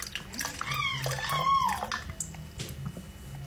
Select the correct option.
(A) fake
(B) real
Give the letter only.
B